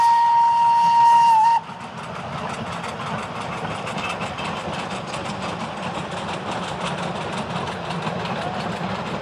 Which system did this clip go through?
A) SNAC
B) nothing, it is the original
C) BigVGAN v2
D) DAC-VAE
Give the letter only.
B